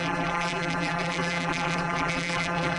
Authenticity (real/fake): fake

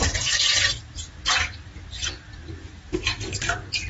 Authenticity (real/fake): real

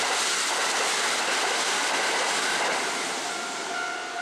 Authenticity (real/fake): fake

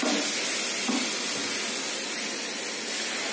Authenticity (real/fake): real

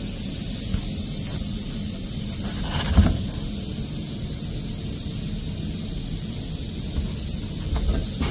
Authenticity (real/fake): real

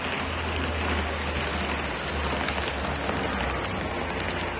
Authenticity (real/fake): real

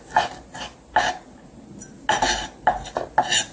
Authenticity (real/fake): real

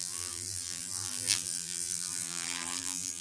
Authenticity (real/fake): fake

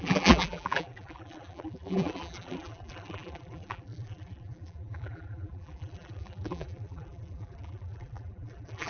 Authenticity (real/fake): fake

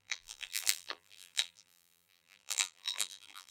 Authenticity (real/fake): fake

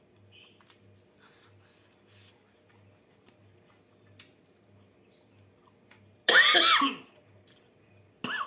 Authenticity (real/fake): real